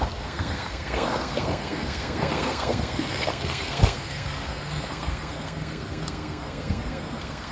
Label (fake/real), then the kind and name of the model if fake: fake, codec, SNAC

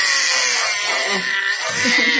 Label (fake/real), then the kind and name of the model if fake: real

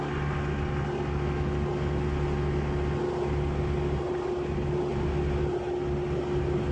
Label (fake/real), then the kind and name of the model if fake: real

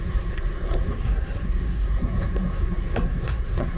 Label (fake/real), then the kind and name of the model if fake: fake, codec, SNAC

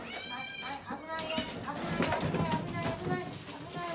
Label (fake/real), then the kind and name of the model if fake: real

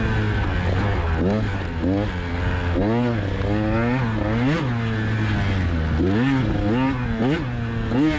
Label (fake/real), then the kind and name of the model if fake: real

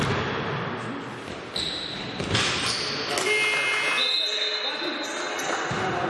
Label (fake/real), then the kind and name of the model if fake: real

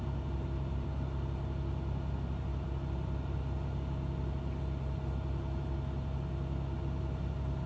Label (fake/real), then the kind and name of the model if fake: real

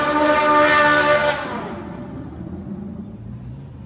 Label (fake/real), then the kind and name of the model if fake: real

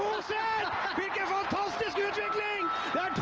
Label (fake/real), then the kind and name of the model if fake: real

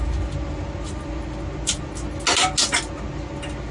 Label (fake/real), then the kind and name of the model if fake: real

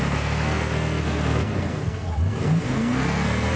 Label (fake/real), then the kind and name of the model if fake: fake, codec, SNAC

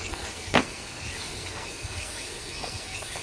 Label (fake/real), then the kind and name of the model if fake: fake, codec, SNAC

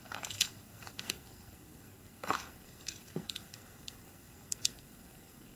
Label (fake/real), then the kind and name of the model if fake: fake, codec, SNAC